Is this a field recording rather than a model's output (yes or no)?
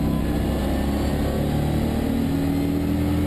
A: yes